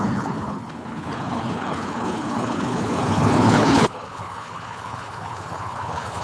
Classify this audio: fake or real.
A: fake